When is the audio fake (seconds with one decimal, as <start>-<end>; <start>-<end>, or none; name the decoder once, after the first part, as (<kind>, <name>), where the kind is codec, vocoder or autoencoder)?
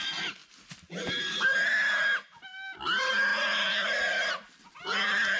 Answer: none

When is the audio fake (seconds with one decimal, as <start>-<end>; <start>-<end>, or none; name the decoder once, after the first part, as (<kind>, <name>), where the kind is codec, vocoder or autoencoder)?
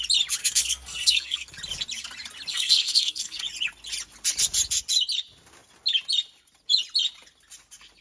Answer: 0.4-1.5 (codec, SNAC); 2.5-3.4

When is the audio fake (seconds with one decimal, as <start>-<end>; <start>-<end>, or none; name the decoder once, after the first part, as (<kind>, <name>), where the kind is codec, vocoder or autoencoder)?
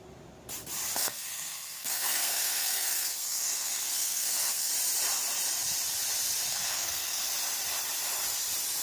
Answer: 1.0-4.7 (codec, SNAC); 6.5-7.3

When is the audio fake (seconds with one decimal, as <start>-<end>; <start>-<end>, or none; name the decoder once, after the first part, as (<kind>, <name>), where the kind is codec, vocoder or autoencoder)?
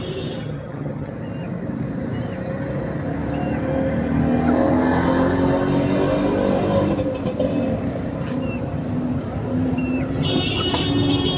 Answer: 0.4-1.1 (vocoder, HiFi-GAN)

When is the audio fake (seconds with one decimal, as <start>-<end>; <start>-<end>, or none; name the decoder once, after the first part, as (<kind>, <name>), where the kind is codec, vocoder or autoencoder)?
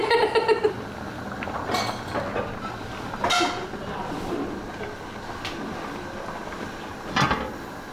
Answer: 0.0-2.4 (vocoder, BigVGAN v2)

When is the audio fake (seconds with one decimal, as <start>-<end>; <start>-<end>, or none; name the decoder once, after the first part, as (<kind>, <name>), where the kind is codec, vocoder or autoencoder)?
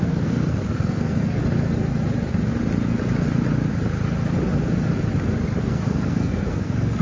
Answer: 0.0-1.4 (codec, SNAC); 5.6-7.0